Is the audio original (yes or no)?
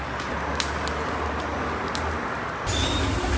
yes